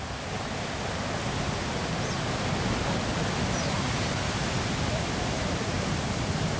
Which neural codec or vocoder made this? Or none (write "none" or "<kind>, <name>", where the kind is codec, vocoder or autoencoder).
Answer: none